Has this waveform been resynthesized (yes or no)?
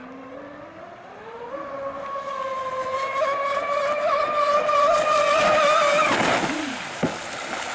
no